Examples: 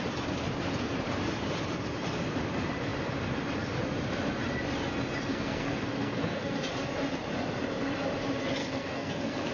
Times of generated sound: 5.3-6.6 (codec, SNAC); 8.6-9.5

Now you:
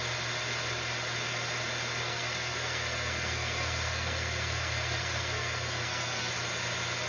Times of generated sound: 2.0-6.3 (codec, SNAC)

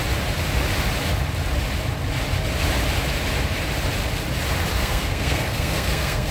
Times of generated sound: 4.8-6.3 (codec, SNAC)

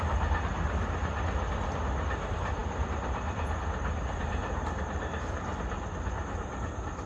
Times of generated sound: none

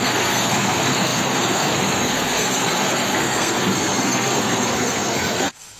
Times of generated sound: 0.0-5.8 (codec, SNAC)